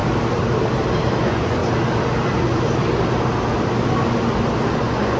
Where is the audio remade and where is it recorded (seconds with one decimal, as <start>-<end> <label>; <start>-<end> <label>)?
0.0-1.2 recorded; 1.2-1.6 remade; 1.6-4.7 recorded; 4.7-5.2 remade